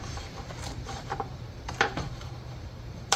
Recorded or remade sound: remade